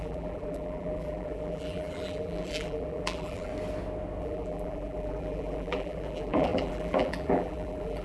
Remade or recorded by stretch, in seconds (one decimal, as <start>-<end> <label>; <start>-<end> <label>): 0.0-3.5 remade; 3.5-4.2 recorded; 4.2-8.0 remade